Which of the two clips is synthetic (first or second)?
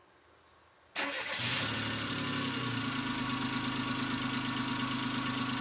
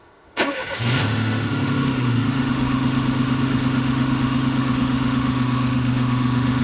second